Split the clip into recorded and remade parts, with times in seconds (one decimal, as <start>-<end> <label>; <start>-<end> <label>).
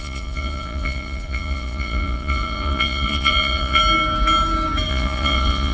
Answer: 0.0-3.8 remade; 3.8-4.9 recorded; 4.9-5.7 remade